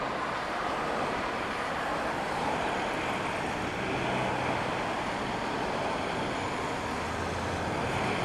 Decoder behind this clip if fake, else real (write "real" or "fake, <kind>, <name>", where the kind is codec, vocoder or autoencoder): real